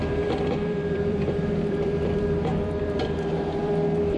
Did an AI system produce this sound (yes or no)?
yes